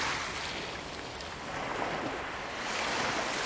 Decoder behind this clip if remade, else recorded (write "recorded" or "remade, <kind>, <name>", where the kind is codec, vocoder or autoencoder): recorded